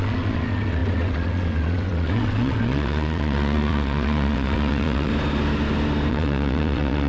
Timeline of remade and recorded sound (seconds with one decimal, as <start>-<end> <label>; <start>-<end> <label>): 0.0-5.1 remade; 5.1-6.1 recorded; 6.1-7.1 remade